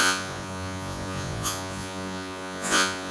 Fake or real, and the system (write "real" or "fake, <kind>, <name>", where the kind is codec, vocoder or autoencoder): fake, vocoder, Vocos